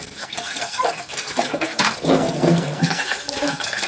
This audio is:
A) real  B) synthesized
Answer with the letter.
B